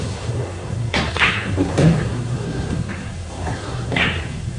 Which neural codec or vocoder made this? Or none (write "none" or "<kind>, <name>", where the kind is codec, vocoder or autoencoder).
codec, SNAC